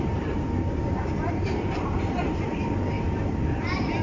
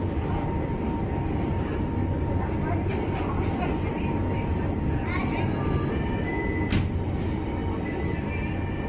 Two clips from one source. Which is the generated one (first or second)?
first